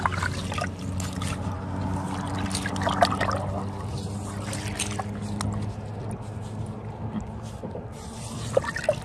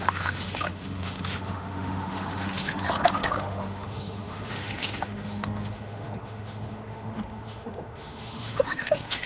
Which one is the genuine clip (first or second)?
first